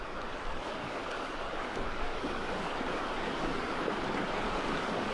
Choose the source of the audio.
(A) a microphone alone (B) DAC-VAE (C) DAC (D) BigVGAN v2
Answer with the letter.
C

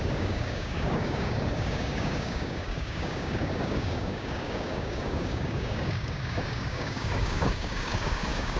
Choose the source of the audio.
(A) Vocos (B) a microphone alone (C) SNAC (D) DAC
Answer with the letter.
D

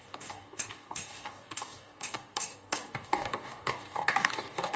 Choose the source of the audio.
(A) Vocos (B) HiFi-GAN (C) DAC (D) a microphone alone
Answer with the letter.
C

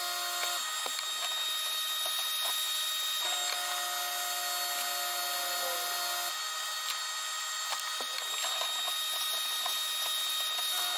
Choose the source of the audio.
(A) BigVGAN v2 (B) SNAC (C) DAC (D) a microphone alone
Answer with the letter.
D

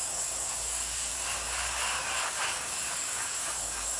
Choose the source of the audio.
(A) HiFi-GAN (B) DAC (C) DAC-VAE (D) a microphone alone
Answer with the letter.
B